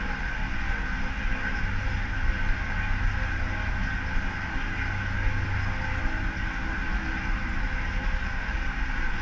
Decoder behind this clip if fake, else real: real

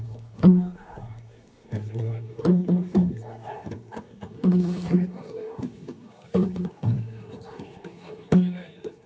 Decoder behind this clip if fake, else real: fake, codec, SNAC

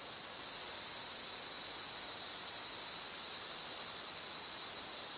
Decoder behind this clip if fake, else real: real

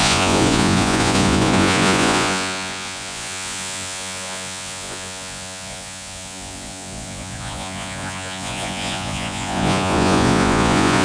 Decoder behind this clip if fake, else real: fake, vocoder, Vocos